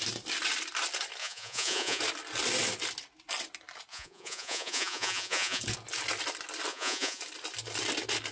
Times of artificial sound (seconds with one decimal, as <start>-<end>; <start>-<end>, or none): 1.2-2.0; 3.9-5.6; 6.7-7.2